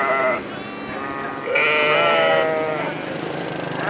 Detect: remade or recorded recorded